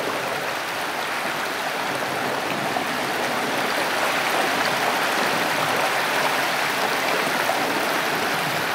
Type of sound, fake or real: real